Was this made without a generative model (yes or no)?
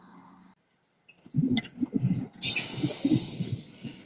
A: yes